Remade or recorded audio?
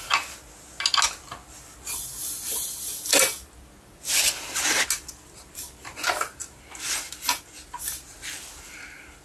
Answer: recorded